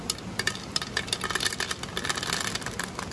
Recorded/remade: recorded